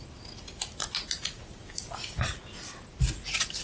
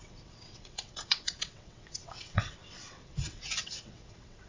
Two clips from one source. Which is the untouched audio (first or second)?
first